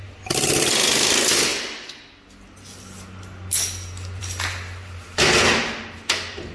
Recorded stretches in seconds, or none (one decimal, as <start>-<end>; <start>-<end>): 0.0-6.5